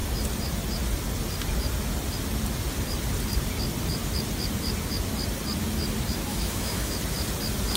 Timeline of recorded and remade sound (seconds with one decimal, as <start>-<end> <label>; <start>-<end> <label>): 0.0-6.3 recorded; 6.3-6.9 remade; 6.9-7.8 recorded